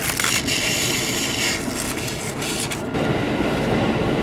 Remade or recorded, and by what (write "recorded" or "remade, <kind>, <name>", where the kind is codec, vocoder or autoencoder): recorded